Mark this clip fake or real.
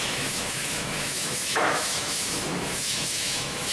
fake